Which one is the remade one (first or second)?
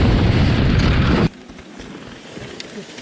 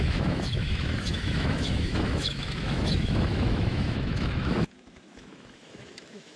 second